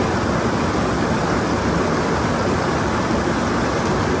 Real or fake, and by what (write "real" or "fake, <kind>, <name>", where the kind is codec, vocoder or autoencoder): real